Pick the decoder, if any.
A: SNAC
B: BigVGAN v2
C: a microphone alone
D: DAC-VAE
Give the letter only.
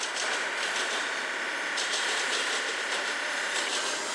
C